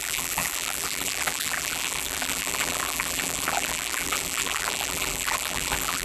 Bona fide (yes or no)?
no